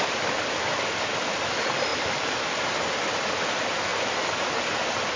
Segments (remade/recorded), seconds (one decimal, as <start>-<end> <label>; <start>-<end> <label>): 0.0-5.2 recorded

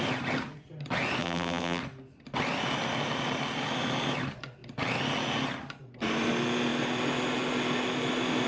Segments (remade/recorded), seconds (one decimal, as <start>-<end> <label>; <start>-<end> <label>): 0.0-1.2 recorded; 1.2-1.8 remade; 1.8-8.5 recorded